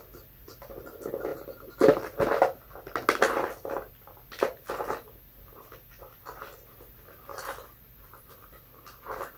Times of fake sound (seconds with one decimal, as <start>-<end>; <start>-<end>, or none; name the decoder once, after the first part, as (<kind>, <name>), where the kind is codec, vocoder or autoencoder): 7.3-8.3 (vocoder, BigVGAN v2)